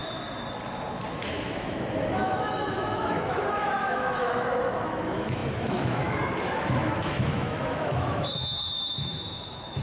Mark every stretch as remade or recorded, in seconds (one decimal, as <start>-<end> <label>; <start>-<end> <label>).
0.0-1.3 recorded; 1.3-9.8 remade